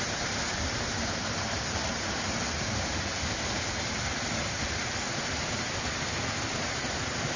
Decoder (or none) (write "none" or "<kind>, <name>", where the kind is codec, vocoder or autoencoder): none